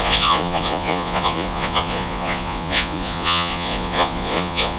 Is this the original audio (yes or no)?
no